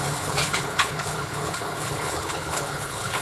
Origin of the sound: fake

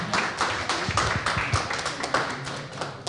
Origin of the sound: real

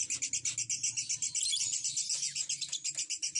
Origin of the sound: real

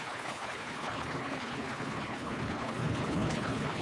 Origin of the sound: fake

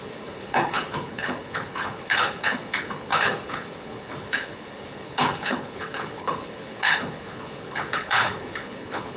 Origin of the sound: fake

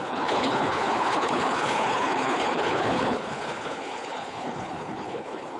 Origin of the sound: fake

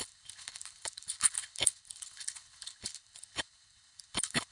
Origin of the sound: fake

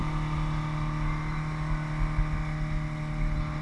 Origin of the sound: real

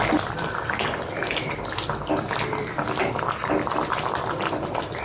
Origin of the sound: real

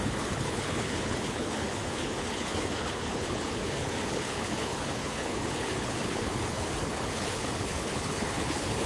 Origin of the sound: fake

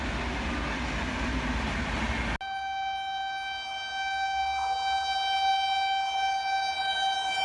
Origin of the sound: real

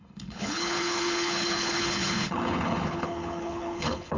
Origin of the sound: fake